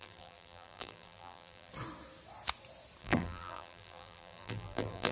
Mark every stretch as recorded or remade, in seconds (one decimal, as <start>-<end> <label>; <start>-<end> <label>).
0.0-1.7 remade; 1.7-3.0 recorded; 3.0-5.1 remade

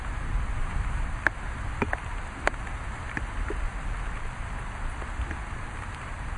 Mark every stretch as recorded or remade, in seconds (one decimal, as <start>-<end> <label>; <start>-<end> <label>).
0.0-0.6 recorded; 0.6-1.1 remade; 1.1-6.4 recorded

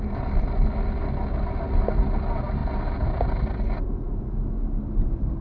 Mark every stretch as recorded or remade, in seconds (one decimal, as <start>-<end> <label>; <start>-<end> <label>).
0.0-5.4 recorded